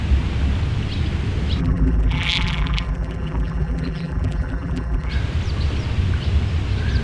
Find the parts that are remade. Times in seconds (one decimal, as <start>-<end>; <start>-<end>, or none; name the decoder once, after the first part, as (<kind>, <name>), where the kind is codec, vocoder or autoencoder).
1.6-5.1 (vocoder, BigVGAN v2)